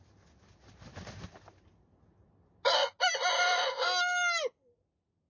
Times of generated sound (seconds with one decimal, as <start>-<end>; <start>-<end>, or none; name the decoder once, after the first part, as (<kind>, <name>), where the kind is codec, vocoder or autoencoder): none